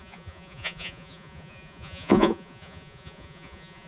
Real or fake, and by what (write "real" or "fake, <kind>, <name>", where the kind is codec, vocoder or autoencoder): fake, vocoder, Vocos